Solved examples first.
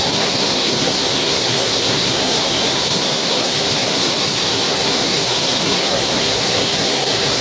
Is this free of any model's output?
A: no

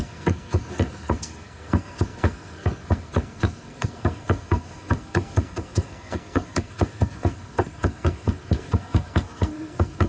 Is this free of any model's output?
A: no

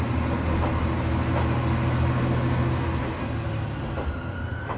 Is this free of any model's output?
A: yes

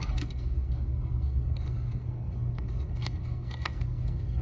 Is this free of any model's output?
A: no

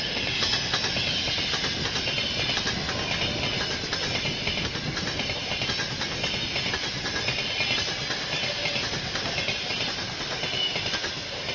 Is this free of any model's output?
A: yes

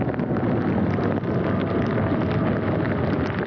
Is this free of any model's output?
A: yes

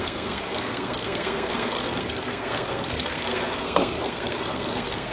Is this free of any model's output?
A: no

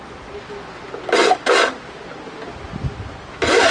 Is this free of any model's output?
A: yes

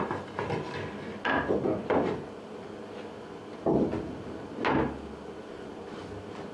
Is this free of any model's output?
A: yes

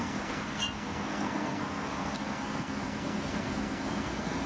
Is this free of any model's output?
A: no